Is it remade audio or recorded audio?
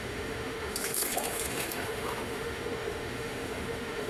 remade